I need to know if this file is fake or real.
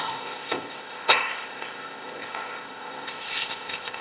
fake